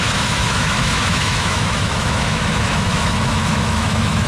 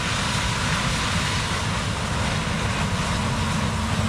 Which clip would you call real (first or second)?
second